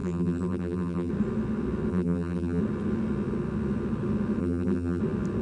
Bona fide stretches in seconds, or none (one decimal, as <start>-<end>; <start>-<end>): 1.1-1.9; 2.6-4.4; 5.0-5.4